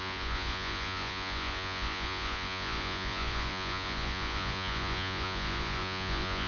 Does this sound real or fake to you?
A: fake